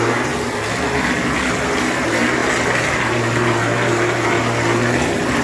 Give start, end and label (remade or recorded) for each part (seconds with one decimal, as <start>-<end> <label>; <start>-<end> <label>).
0.0-5.4 recorded